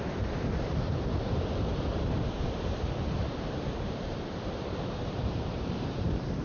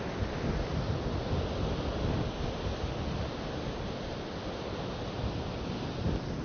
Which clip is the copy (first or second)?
first